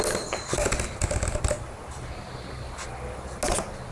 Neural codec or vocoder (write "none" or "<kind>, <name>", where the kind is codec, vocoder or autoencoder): none